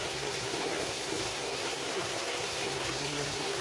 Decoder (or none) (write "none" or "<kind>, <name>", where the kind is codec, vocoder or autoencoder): codec, SNAC